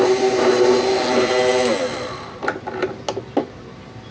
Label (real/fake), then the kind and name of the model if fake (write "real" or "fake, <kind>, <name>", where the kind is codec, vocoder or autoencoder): real